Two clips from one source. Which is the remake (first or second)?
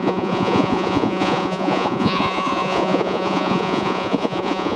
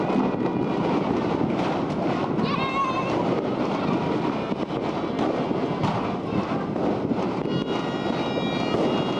first